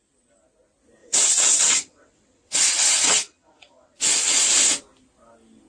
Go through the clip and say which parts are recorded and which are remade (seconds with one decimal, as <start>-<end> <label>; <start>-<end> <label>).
0.0-1.0 recorded; 1.0-4.4 remade; 4.4-5.7 recorded